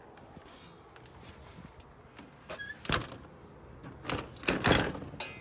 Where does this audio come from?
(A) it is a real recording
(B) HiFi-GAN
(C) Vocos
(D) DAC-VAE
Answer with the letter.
A